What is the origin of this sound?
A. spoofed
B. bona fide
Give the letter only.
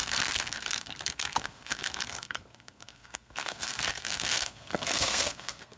A